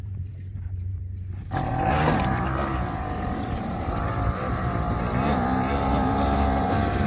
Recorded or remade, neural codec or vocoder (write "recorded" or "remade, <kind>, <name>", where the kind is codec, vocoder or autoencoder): remade, vocoder, BigVGAN v2